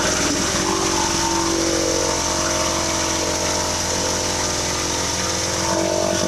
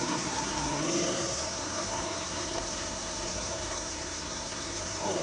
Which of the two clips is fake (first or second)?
second